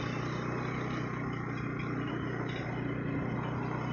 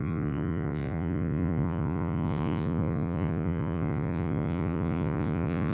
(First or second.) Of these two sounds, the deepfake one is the second